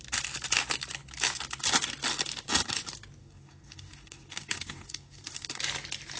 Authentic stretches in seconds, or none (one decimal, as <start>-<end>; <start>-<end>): 0.0-3.2; 5.6-6.2